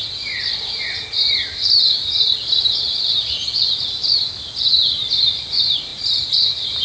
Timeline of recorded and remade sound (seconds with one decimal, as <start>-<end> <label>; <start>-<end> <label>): 0.0-6.8 recorded